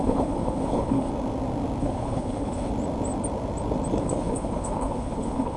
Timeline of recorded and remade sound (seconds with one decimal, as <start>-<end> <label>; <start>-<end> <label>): 0.0-1.1 remade; 1.1-1.8 recorded; 1.8-2.7 remade; 2.7-4.0 recorded; 4.0-5.6 remade